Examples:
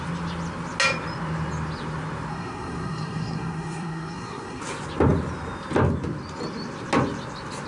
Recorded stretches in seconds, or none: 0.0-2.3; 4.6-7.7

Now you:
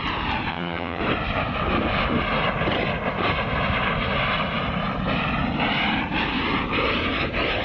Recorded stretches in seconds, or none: 0.0-0.5; 1.0-7.6

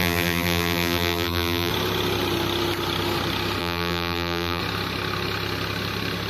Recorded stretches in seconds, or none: 1.7-3.6; 4.6-6.3

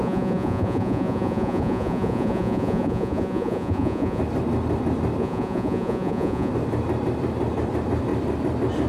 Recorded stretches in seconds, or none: 4.2-5.2; 6.5-8.9

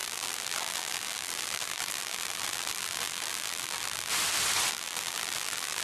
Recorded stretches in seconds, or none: 4.1-4.7

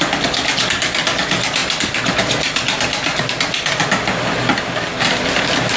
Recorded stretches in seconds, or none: 0.0-5.8

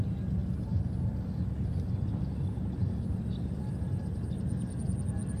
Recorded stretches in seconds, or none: 0.0-5.4